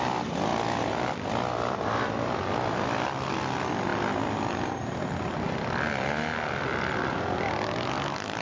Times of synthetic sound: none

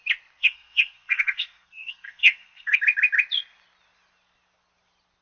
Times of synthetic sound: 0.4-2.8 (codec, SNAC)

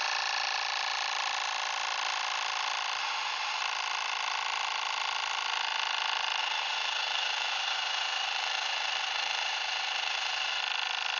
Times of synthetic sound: 3.0-3.6 (autoencoder, DAC-VAE); 6.4-10.6

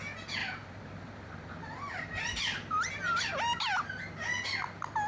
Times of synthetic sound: 0.4-3.3 (vocoder, BigVGAN v2)

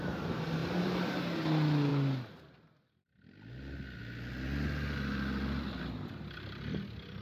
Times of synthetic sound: 0.6-1.2 (vocoder, BigVGAN v2)

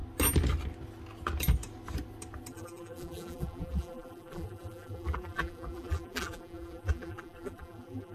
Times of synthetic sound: 2.5-8.1 (vocoder, BigVGAN v2)

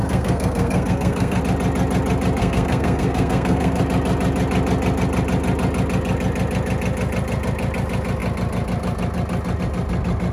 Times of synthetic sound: 0.0-1.4 (codec, SNAC); 2.4-3.8

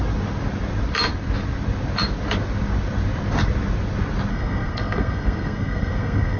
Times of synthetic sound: 4.3-6.4 (codec, SNAC)